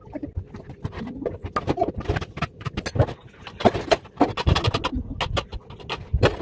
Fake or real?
real